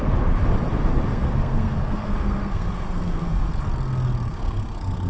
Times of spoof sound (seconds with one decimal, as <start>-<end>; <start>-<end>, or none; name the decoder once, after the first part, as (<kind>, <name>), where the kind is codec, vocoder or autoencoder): 1.1-3.5 (codec, SNAC); 4.3-5.1